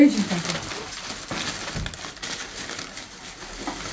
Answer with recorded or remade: recorded